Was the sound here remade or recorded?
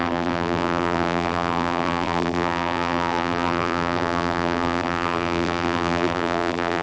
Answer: remade